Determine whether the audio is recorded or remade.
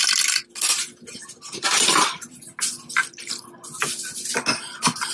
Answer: recorded